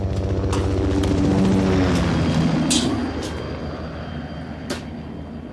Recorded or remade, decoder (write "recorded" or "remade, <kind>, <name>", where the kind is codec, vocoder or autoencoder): recorded